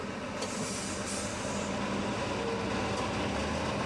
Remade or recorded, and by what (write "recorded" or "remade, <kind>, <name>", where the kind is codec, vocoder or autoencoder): recorded